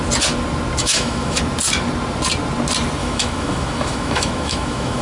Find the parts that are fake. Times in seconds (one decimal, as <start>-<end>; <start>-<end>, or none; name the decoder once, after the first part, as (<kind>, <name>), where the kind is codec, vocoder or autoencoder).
0.8-1.4 (autoencoder, DAC-VAE); 3.0-5.0